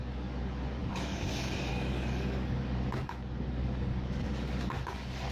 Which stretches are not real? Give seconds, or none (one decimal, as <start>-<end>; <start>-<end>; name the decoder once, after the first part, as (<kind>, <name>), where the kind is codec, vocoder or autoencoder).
0.0-5.3 (codec, DAC)